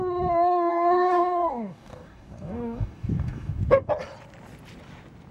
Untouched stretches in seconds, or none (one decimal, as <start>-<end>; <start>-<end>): 0.0-0.7; 3.9-5.3